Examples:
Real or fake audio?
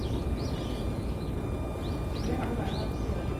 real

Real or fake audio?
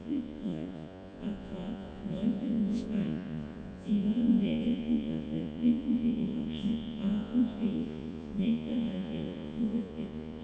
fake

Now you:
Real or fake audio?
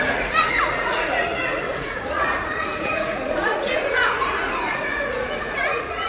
fake